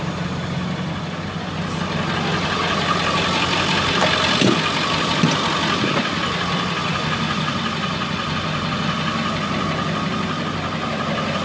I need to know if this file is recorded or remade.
recorded